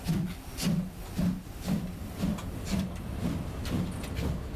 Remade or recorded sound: recorded